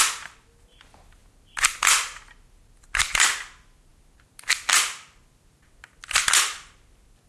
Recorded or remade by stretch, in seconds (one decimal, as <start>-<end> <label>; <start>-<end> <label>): 0.0-7.3 recorded